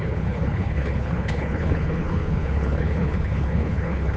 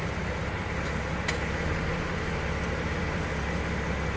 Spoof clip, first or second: first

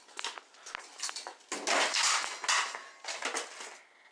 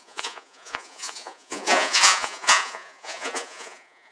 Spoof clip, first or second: second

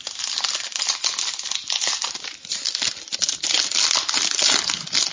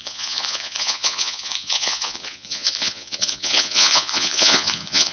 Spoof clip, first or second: second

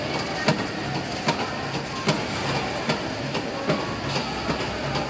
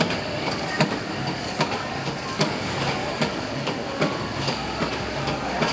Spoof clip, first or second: second